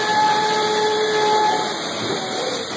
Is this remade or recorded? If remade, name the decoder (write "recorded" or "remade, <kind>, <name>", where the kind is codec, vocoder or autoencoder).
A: remade, vocoder, BigVGAN v2